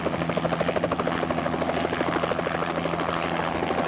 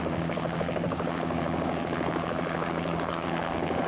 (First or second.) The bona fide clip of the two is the first